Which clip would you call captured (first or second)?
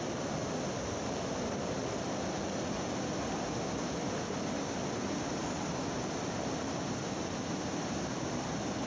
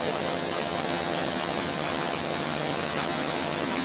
first